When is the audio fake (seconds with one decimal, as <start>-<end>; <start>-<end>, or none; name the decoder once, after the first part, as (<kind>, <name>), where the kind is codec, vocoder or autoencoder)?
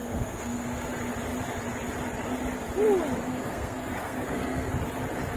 0.0-0.9 (codec, SNAC); 3.3-4.7